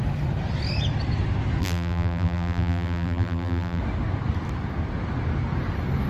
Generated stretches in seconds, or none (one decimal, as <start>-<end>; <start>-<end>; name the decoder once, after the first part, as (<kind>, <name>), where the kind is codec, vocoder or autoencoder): 1.6-3.8 (vocoder, BigVGAN v2)